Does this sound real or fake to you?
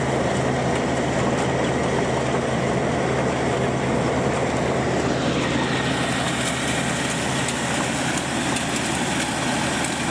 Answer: real